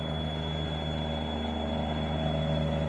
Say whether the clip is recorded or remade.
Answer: recorded